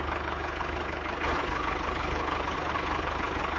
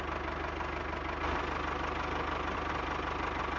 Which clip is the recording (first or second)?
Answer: second